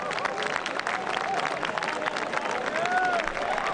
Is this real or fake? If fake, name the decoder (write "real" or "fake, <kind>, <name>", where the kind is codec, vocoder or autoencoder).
real